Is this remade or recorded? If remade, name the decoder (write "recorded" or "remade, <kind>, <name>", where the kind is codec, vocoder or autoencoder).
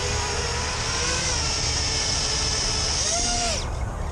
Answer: recorded